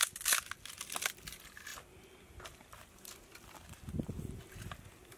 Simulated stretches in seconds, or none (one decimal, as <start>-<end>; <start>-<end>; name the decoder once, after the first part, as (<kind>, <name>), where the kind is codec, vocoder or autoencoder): none